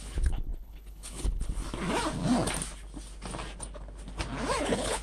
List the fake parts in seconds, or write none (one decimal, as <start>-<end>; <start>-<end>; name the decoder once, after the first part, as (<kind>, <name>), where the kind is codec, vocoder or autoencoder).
0.0-1.6 (codec, HILCodec); 4.6-5.0